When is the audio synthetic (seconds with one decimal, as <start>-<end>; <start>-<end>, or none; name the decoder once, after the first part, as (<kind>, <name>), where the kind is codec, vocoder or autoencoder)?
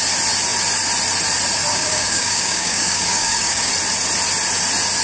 1.7-3.7 (codec, DAC)